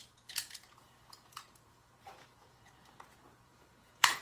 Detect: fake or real fake